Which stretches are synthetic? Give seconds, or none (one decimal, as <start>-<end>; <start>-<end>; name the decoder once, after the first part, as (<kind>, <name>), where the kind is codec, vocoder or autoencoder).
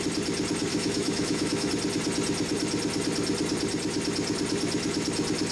0.7-1.7 (autoencoder, DAC-VAE)